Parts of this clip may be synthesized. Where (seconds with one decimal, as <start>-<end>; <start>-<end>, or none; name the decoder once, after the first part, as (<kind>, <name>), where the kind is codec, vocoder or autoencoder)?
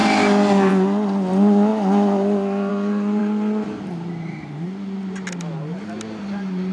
none